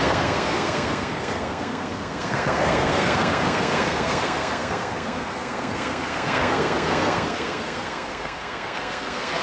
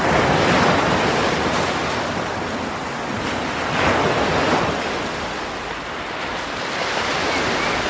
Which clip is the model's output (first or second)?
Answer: first